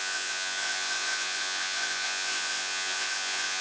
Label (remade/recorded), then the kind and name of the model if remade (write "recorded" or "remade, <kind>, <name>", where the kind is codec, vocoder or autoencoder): remade, vocoder, Vocos